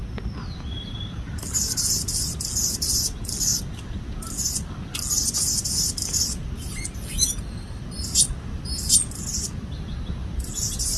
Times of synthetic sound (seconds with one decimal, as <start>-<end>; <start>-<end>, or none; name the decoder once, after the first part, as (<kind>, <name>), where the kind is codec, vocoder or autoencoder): none